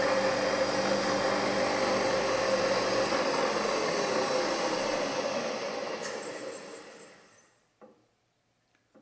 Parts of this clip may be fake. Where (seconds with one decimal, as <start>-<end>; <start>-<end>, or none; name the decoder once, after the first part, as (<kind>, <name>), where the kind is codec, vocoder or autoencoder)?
none

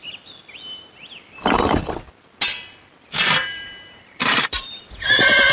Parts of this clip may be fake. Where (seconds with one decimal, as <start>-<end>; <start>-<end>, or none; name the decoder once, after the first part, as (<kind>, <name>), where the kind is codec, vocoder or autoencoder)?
3.4-4.9 (vocoder, BigVGAN v2)